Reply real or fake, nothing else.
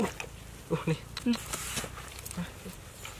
real